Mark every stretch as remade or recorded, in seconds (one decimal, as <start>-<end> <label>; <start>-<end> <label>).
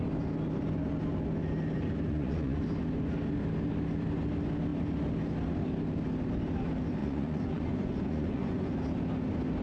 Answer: 0.0-2.1 recorded; 2.1-2.6 remade; 2.6-7.0 recorded; 7.0-8.7 remade; 8.7-9.6 recorded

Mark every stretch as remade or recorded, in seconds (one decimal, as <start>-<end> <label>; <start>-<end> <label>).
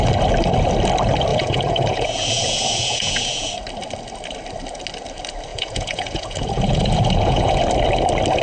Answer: 0.0-1.3 recorded; 1.3-3.5 remade; 3.5-5.5 recorded; 5.5-7.6 remade; 7.6-8.4 recorded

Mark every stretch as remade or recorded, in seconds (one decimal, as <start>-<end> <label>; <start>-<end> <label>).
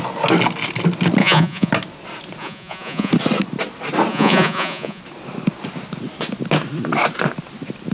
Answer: 0.0-1.2 recorded; 1.2-1.7 remade; 1.7-2.4 recorded; 2.4-3.1 remade; 3.1-4.1 recorded; 4.1-5.0 remade; 5.0-7.9 recorded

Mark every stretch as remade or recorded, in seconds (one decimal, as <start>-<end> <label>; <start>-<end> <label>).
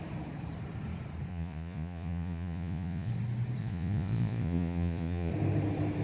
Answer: 0.0-1.3 recorded; 1.3-3.1 remade; 3.1-3.6 recorded; 3.6-5.3 remade; 5.3-6.0 recorded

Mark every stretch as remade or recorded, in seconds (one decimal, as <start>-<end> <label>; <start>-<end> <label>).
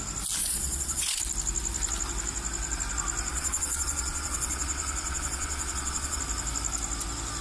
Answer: 0.0-0.4 recorded; 0.4-1.2 remade; 1.2-3.3 recorded; 3.3-6.2 remade; 6.2-7.4 recorded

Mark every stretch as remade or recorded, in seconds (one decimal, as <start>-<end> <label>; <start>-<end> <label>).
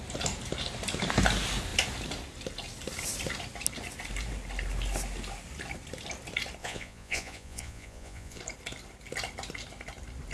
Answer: 0.0-6.6 recorded; 6.6-8.4 remade; 8.4-10.3 recorded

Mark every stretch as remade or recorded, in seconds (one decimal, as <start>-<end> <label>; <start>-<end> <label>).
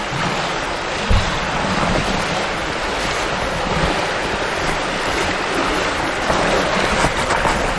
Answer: 0.0-7.8 recorded